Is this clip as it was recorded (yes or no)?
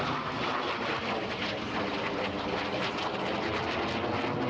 yes